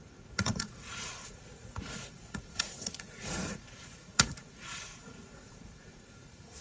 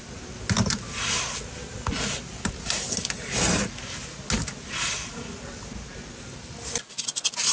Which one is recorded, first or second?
second